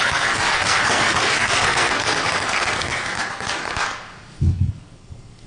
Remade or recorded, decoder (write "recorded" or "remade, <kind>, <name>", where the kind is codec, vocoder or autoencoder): remade, codec, SNAC